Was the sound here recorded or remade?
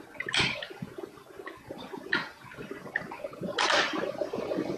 recorded